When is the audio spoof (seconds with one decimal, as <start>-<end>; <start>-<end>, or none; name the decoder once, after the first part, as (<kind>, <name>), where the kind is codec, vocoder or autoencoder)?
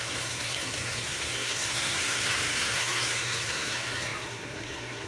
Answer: 0.0-5.1 (codec, SNAC)